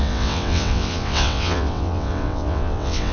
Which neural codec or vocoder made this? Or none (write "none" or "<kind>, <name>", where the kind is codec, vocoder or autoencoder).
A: vocoder, WaveNeXt